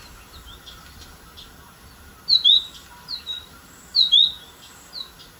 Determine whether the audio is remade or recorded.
recorded